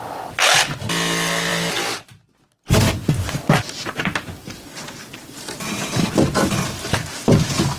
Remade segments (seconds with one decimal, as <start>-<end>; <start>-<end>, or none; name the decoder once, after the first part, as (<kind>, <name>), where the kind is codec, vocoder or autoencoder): none

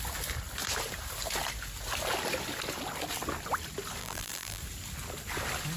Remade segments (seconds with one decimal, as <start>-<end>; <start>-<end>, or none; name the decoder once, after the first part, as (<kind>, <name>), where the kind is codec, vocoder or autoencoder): 4.0-4.6 (vocoder, BigVGAN v2)